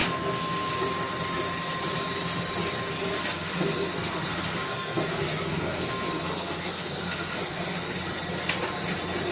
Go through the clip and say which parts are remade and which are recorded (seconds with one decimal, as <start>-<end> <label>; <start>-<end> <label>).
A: 0.0-0.7 remade; 0.7-3.2 recorded; 3.2-8.0 remade; 8.0-9.3 recorded